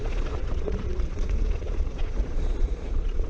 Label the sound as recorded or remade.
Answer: remade